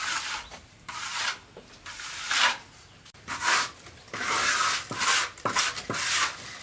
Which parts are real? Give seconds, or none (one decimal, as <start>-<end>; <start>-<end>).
0.0-6.6